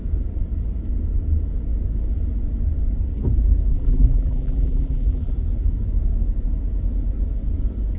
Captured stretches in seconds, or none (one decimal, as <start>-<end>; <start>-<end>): 0.0-3.7; 5.3-8.0